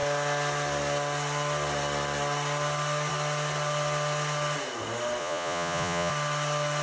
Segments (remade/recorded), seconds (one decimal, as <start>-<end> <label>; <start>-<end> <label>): 0.0-5.2 recorded; 5.2-6.1 remade; 6.1-6.8 recorded